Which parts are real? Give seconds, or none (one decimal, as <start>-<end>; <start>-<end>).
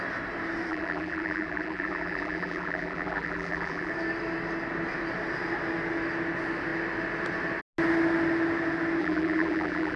0.0-0.7; 3.9-9.0